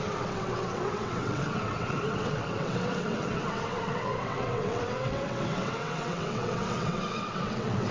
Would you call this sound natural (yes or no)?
no